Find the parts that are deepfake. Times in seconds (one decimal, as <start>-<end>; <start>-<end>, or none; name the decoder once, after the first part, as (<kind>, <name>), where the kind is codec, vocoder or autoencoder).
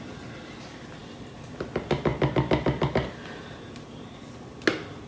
none